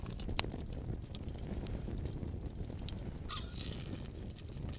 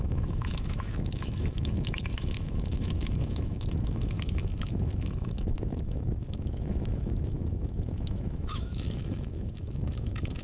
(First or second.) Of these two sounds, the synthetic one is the second